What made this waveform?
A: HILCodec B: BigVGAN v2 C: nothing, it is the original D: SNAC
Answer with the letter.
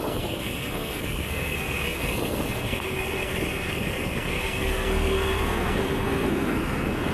D